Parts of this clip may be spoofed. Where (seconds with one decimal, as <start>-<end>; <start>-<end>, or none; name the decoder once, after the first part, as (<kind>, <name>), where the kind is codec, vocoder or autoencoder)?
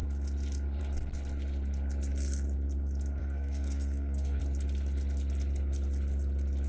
3.2-4.4 (codec, SNAC)